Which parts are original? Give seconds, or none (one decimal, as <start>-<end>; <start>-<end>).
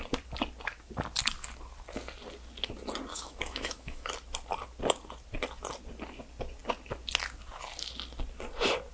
0.0-3.1; 4.1-8.9